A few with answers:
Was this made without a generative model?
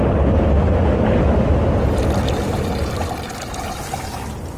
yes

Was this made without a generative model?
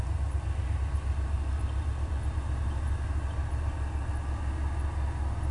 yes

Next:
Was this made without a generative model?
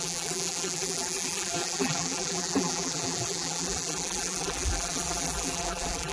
no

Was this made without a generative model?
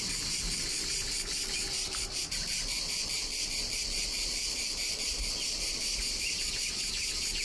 no